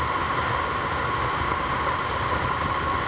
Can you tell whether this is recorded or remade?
recorded